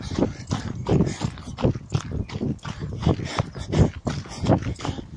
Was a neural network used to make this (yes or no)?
yes